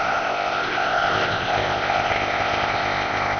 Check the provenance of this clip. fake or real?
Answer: fake